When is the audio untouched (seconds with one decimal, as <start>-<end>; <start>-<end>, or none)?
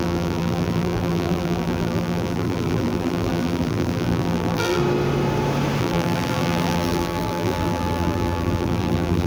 4.8-5.8